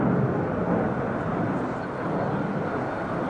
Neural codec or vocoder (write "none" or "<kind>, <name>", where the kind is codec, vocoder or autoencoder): none